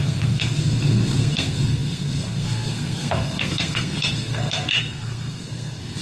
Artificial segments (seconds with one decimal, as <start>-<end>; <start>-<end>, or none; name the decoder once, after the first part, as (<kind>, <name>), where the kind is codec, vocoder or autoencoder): 0.0-6.0 (codec, SNAC)